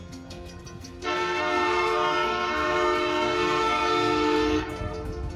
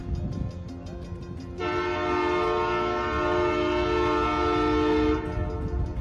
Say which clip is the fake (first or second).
first